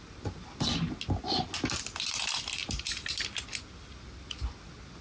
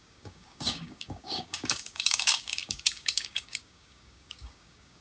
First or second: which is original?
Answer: first